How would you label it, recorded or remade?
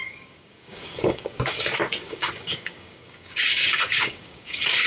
remade